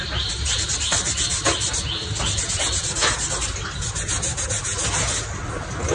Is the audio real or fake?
real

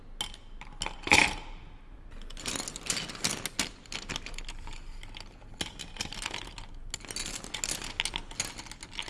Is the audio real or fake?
real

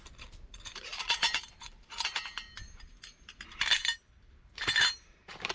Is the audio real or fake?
fake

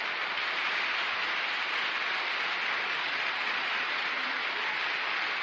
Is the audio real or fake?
real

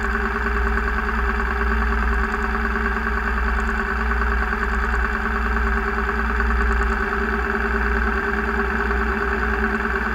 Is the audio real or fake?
real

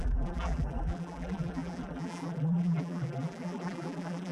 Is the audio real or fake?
fake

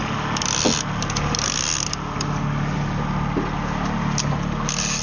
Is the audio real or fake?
real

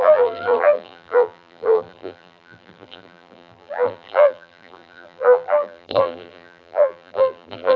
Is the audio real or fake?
fake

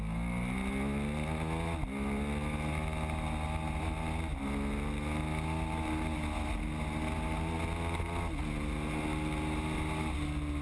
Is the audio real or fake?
real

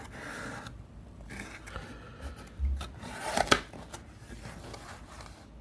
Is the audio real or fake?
real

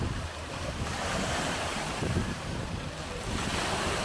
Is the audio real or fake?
fake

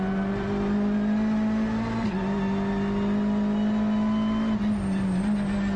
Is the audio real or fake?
real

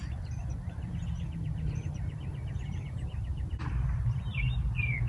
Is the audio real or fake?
fake